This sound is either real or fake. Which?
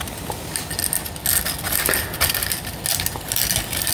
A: real